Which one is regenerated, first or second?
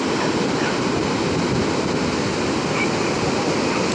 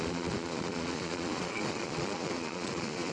second